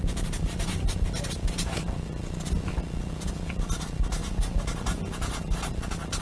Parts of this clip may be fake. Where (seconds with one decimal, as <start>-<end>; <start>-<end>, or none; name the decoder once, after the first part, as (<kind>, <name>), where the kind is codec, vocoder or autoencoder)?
0.0-2.2 (vocoder, BigVGAN v2); 3.1-4.2